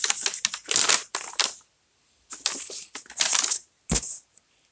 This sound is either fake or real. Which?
real